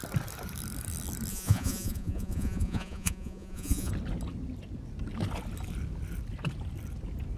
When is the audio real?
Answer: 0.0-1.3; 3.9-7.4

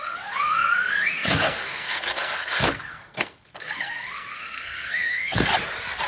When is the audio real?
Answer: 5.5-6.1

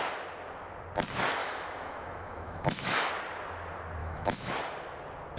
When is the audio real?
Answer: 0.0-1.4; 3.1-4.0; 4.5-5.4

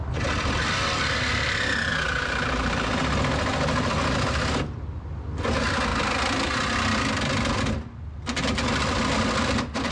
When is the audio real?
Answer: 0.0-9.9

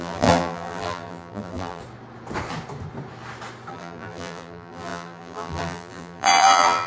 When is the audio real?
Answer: 1.8-3.7

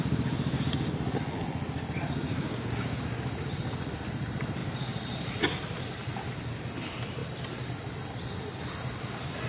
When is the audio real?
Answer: 0.0-2.3; 3.0-9.5

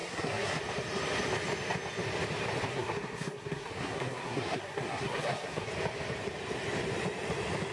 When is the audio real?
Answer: 0.6-2.7; 5.7-7.7